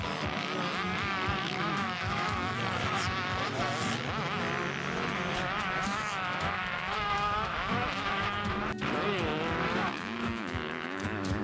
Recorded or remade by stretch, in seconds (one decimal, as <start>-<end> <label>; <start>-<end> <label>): 0.0-1.4 recorded; 1.4-2.6 remade; 2.6-5.9 recorded; 5.9-8.6 remade; 8.6-9.3 recorded; 9.3-11.4 remade